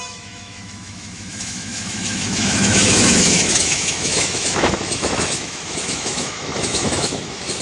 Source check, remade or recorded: remade